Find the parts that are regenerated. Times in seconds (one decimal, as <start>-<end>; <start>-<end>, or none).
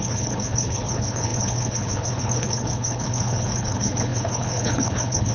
0.0-5.3